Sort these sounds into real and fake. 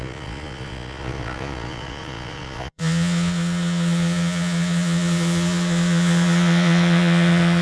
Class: fake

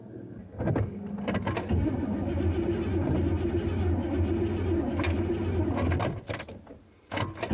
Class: real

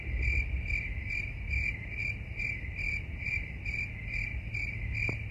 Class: real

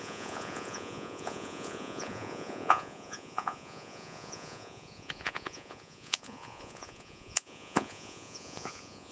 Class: fake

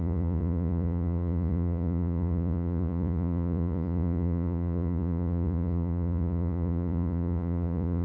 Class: fake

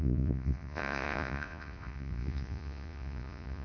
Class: fake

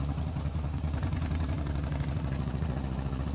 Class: fake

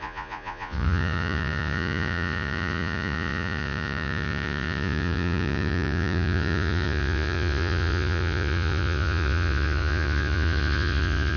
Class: fake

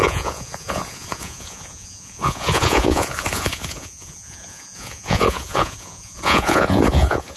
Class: fake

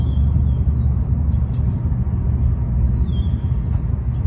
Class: real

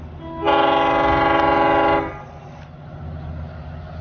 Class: real